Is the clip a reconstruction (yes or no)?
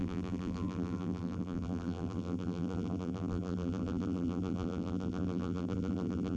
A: yes